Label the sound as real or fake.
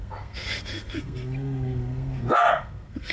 fake